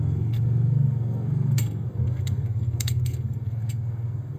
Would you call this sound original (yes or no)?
no